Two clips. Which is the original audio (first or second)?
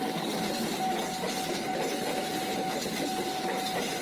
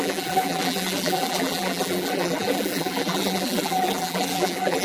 first